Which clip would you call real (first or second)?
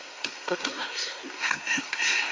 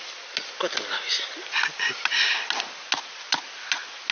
second